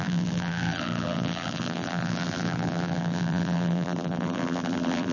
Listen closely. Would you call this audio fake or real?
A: fake